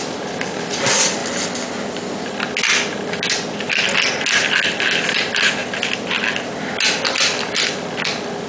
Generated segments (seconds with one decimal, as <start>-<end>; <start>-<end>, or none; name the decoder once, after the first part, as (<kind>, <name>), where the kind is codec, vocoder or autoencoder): none